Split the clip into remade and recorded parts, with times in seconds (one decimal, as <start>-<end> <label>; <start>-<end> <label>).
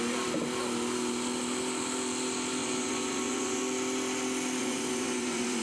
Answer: 0.0-2.6 recorded; 2.6-3.6 remade; 3.6-4.6 recorded; 4.6-5.6 remade